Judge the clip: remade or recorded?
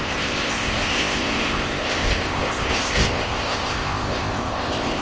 remade